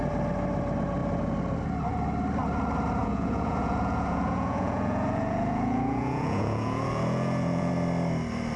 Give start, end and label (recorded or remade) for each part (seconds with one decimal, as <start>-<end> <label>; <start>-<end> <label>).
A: 0.0-3.0 recorded; 3.0-7.7 remade; 7.7-8.6 recorded